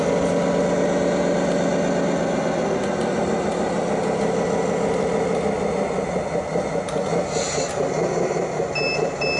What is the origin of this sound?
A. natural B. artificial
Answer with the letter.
A